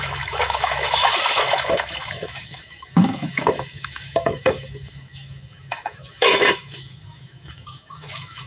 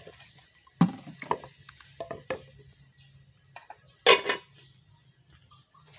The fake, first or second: first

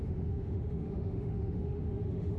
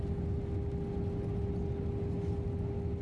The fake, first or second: first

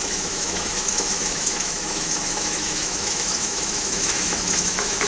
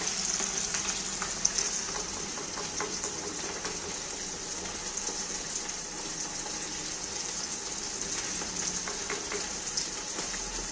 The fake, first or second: first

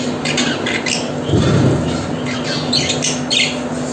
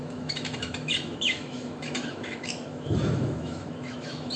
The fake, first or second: second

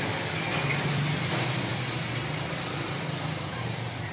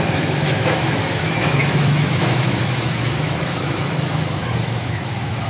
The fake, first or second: second